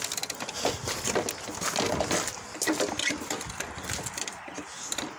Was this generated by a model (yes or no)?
no